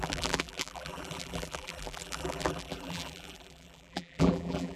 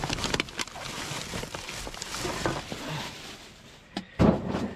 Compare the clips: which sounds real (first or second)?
second